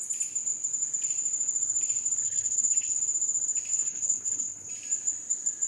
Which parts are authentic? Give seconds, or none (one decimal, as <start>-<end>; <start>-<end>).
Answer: 0.0-2.2; 3.0-3.7; 4.7-5.7